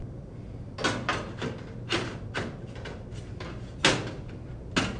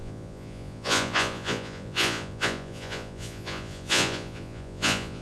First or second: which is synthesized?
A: second